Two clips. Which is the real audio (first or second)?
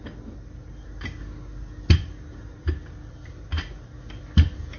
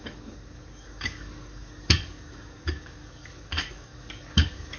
first